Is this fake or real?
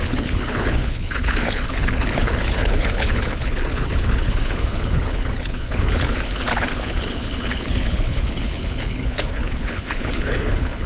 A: fake